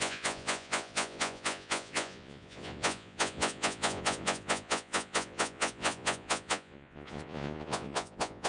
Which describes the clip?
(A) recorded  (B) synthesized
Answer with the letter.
B